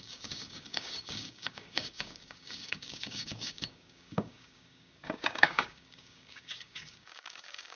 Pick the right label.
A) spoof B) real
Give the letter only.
A